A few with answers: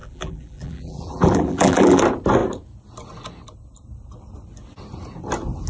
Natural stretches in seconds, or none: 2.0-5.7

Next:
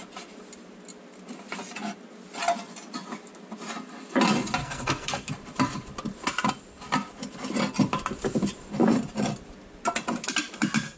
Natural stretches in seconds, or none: 0.0-4.6; 5.3-11.0

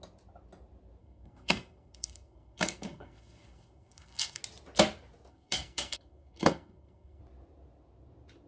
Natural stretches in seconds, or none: 0.0-1.0; 4.4-5.3; 7.2-8.5

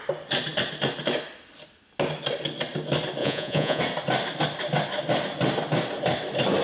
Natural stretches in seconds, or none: 0.0-3.2; 3.8-6.6

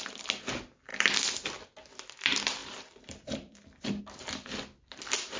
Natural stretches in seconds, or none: 0.0-2.6; 4.0-5.4

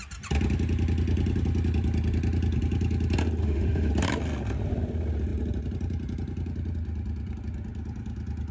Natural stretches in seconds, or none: 0.0-3.4; 3.9-8.5